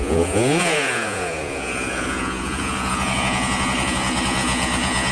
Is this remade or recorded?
remade